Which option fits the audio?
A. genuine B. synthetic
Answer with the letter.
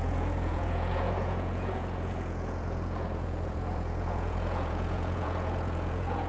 B